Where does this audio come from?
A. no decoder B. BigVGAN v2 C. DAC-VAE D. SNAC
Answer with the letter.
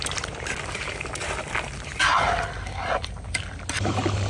B